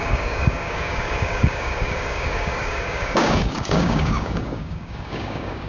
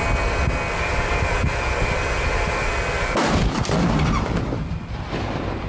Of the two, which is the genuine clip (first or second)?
second